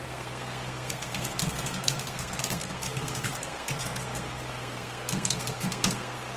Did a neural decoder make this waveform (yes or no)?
yes